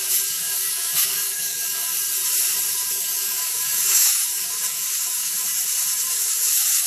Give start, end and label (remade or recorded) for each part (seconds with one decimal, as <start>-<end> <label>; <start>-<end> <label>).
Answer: 0.0-1.9 remade; 1.9-2.7 recorded; 2.7-5.3 remade; 5.3-6.1 recorded; 6.1-6.9 remade